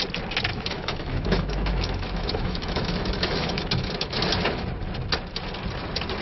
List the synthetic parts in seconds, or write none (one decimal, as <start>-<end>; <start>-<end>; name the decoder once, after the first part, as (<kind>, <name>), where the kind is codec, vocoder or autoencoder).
0.5-4.2 (autoencoder, DAC-VAE)